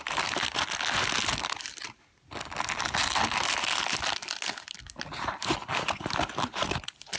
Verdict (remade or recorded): recorded